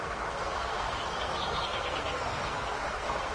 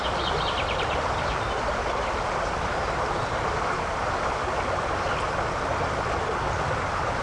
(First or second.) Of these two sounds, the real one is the second